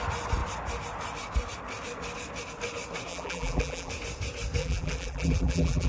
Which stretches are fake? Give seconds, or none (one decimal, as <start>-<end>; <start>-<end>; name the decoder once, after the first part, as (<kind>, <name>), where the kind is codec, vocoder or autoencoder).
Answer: 3.1-3.9 (vocoder, BigVGAN v2); 4.6-5.9